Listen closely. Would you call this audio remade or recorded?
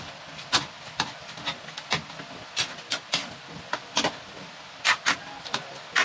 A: recorded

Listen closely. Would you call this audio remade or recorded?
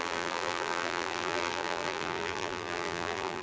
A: remade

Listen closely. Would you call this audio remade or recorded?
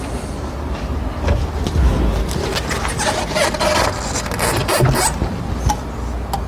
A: recorded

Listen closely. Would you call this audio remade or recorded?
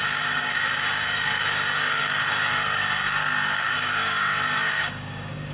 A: remade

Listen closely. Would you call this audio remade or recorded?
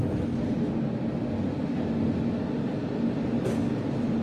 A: recorded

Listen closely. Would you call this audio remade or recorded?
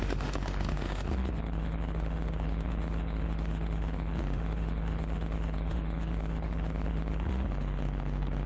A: remade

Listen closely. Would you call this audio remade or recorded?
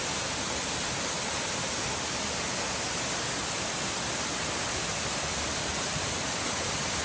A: recorded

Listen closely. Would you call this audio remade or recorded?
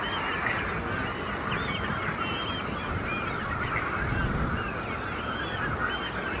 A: recorded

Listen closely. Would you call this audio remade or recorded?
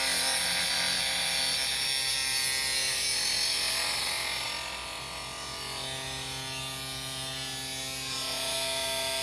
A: recorded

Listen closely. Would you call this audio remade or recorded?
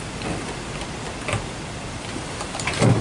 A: remade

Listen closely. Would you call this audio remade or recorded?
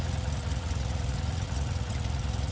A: remade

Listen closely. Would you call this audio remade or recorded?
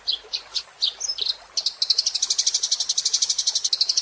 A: recorded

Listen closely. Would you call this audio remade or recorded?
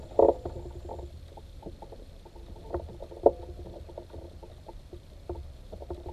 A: recorded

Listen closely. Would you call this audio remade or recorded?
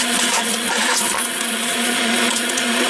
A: remade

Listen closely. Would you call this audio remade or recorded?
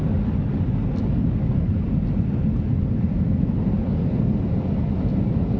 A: recorded